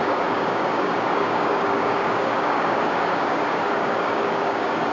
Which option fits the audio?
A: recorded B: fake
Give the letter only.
B